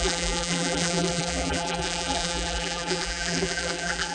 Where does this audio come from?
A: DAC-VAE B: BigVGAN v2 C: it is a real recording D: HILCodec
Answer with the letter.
B